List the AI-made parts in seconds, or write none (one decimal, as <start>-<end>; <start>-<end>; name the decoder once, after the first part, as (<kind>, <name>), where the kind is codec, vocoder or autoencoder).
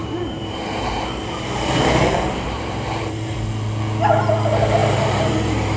0.0-3.5 (vocoder, BigVGAN v2); 4.8-5.8